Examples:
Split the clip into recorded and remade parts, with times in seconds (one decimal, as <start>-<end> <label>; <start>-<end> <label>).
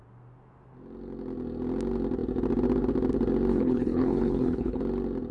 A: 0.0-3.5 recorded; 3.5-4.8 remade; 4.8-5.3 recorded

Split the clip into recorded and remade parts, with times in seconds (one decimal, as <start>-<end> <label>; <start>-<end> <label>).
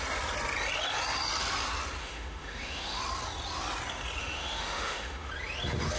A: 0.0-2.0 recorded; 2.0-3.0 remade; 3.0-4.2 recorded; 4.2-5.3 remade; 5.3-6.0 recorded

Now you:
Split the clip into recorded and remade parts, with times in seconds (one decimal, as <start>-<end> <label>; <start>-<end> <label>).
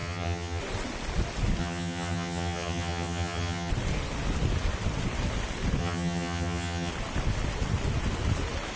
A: 0.0-0.6 remade; 0.6-1.6 recorded; 1.6-3.7 remade; 3.7-5.8 recorded; 5.8-6.9 remade; 6.9-8.8 recorded